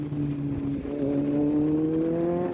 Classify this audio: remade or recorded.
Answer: recorded